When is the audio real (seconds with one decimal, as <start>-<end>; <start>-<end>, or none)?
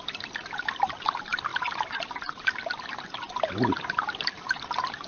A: 0.0-5.1